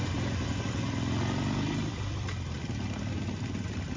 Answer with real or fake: real